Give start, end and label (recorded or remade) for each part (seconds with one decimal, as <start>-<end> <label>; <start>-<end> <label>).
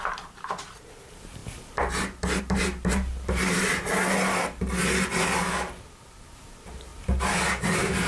0.0-1.4 remade; 1.4-2.4 recorded; 2.4-3.1 remade; 3.1-6.2 recorded; 6.2-8.1 remade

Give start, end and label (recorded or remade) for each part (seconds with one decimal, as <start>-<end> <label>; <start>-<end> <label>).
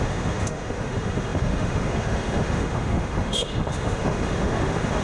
0.0-5.0 remade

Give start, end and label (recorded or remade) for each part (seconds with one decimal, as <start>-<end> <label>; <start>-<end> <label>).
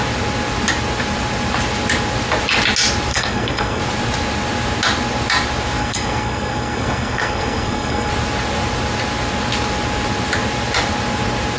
0.0-3.1 recorded; 3.1-3.8 remade; 3.8-5.8 recorded; 5.8-8.1 remade; 8.1-11.6 recorded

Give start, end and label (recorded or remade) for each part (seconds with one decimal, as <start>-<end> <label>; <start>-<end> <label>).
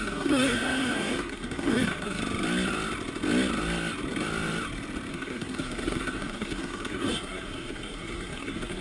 0.0-2.2 remade; 2.2-5.1 recorded; 5.1-8.8 remade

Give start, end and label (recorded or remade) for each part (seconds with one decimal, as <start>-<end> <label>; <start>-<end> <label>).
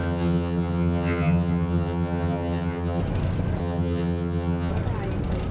0.0-3.0 remade; 3.0-3.6 recorded; 3.6-4.7 remade; 4.7-5.5 recorded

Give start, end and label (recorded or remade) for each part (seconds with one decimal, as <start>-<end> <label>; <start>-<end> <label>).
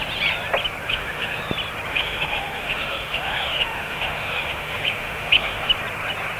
0.0-0.9 recorded; 0.9-1.4 remade; 1.4-1.9 recorded; 1.9-5.7 remade; 5.7-6.4 recorded